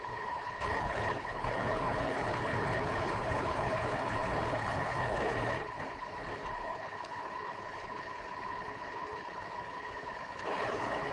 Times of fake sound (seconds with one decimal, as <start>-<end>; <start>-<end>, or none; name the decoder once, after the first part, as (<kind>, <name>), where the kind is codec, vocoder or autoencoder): 0.0-11.1 (codec, HILCodec)